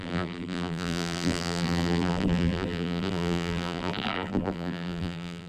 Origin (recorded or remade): remade